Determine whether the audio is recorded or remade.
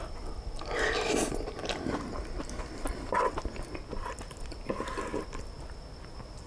recorded